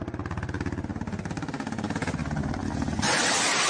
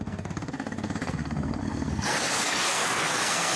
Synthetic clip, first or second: second